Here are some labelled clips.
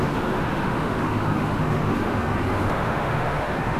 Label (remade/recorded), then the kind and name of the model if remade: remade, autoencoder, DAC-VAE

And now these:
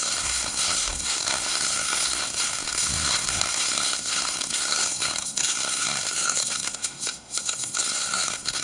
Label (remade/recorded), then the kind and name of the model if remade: remade, codec, SNAC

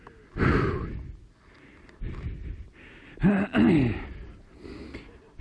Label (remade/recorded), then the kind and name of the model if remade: recorded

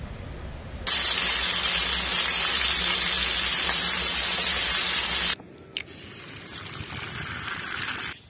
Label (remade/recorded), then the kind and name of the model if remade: recorded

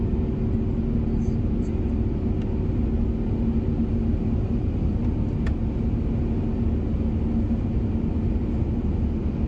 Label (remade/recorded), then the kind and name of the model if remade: recorded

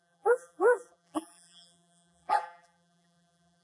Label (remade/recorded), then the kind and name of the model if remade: remade, vocoder, BigVGAN v2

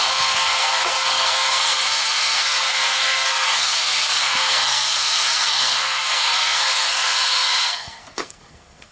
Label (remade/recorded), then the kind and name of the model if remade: remade, codec, SNAC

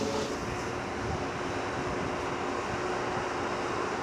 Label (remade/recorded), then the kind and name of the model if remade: recorded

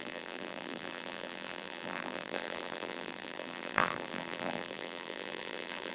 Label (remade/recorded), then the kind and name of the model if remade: remade, vocoder, BigVGAN v2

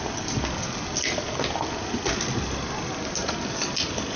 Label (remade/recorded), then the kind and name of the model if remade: recorded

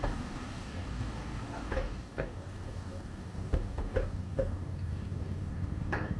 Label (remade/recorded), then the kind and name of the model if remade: remade, codec, DAC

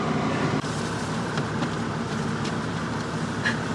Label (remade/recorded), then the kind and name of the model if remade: remade, vocoder, BigVGAN v2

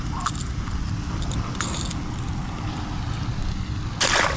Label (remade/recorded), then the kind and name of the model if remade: recorded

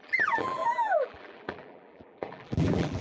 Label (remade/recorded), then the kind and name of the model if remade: remade, vocoder, BigVGAN v2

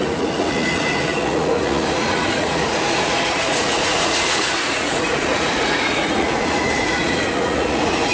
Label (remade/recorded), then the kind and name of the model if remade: remade, vocoder, Vocos